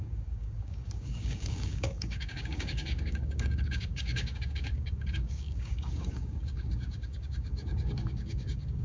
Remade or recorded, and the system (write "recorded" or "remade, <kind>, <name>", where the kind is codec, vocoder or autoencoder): remade, codec, DAC